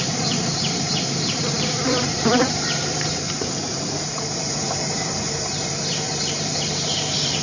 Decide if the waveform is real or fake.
fake